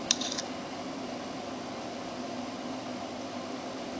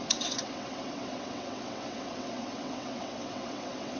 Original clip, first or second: first